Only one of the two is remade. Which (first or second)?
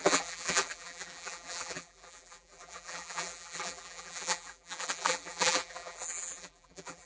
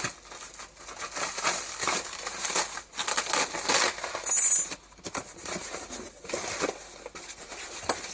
first